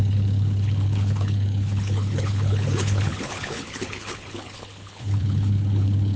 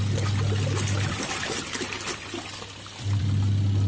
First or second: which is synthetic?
first